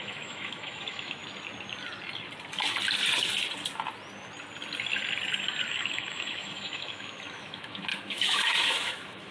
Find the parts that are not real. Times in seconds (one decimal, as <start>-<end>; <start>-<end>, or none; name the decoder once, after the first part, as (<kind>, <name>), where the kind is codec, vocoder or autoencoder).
0.0-1.2 (autoencoder, DAC-VAE); 5.7-9.3